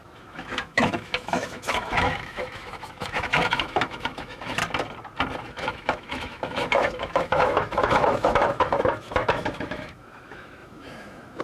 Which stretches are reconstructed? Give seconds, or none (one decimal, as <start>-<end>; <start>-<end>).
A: 0.0-4.6; 5.4-11.4